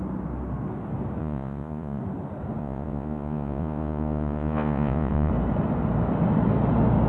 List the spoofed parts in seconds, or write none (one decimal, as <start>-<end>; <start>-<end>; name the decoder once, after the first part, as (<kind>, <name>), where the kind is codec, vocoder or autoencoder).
1.2-2.0 (vocoder, Vocos); 2.6-5.3